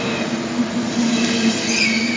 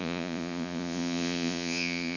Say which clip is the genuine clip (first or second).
first